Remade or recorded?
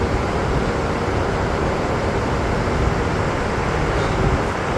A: remade